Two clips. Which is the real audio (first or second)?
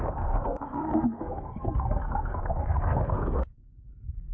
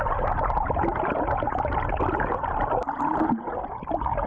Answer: second